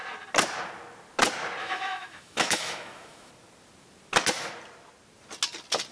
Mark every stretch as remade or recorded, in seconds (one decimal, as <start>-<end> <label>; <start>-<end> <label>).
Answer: 0.0-1.6 recorded; 1.6-3.3 remade; 3.3-5.9 recorded

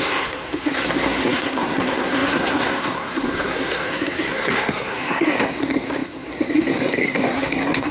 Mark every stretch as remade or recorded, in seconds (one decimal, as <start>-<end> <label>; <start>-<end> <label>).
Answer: 0.0-7.9 remade

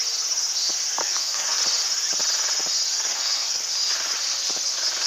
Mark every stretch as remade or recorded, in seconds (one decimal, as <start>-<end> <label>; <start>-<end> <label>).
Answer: 0.0-1.0 recorded; 1.0-1.6 remade; 1.6-3.1 recorded; 3.1-3.6 remade; 3.6-5.1 recorded

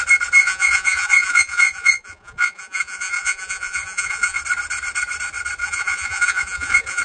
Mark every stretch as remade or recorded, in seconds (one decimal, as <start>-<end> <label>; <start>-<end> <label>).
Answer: 0.0-0.4 recorded; 0.4-4.4 remade; 4.4-5.6 recorded; 5.6-7.0 remade

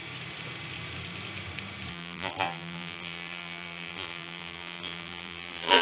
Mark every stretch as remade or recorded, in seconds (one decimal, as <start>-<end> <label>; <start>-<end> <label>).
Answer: 0.0-1.9 recorded; 1.9-5.8 remade

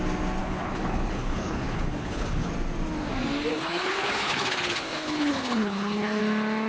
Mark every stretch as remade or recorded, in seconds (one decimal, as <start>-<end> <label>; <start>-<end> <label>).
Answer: 0.0-0.4 recorded; 0.4-2.5 remade; 2.5-3.5 recorded; 3.5-6.2 remade; 6.2-6.7 recorded